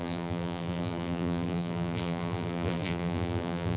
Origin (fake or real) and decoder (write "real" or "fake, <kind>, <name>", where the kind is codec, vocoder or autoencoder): fake, vocoder, BigVGAN v2